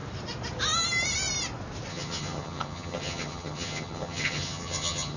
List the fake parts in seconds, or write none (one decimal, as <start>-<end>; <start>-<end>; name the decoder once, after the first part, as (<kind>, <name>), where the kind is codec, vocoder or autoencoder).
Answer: 1.9-5.2 (vocoder, HiFi-GAN)